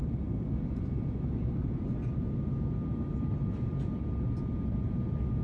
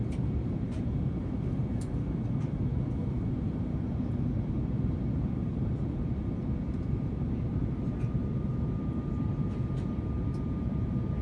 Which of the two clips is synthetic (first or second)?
second